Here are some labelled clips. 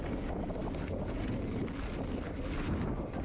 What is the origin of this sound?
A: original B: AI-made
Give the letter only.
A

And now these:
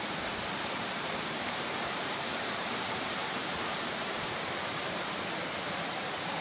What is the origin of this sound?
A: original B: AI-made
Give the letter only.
B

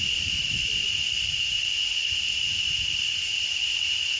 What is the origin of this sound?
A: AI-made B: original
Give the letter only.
A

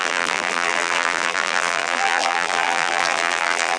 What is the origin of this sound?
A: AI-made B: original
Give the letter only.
A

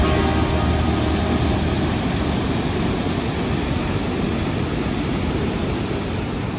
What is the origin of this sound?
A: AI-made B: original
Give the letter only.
B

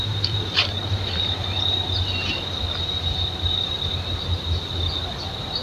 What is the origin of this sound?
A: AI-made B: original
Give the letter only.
A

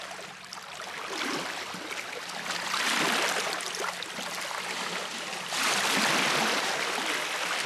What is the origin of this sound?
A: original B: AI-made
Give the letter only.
A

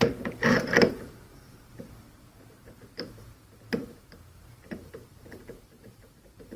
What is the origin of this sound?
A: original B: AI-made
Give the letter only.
B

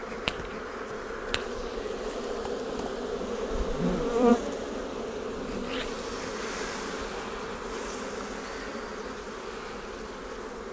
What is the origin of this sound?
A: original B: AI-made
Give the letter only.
B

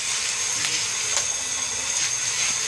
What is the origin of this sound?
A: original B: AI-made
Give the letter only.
A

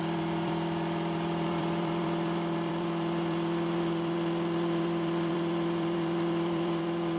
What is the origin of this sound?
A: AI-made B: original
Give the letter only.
A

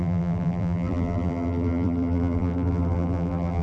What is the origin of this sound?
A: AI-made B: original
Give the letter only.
A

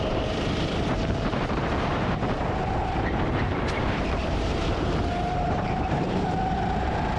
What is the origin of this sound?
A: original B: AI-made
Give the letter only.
B